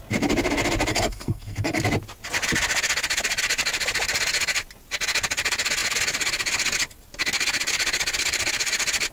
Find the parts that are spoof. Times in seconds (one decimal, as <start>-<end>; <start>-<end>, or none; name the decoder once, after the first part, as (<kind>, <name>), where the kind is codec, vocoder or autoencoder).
0.9-1.8 (codec, SNAC)